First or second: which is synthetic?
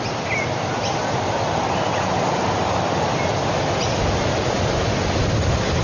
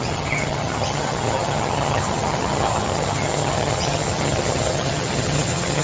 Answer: second